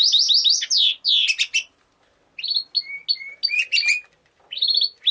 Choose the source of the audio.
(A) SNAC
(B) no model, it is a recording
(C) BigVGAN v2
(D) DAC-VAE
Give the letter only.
B